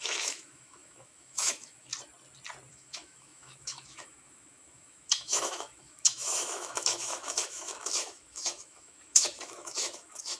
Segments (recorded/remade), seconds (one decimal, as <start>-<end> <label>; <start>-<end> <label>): 0.0-1.9 remade; 1.9-2.7 recorded; 2.7-10.4 remade